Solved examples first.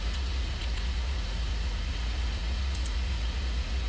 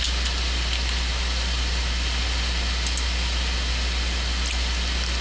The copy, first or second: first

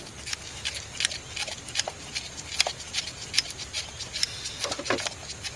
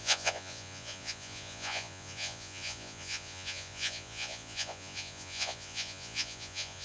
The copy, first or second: second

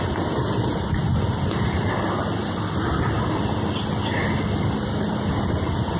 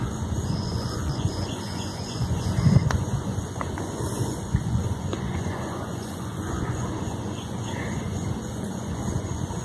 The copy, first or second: second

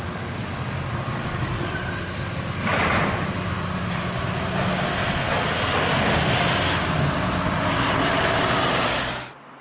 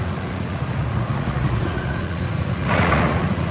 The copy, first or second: second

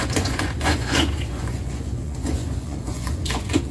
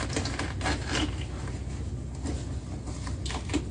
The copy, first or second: first